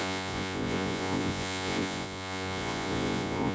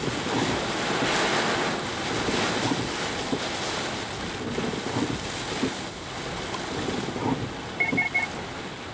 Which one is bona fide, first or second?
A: second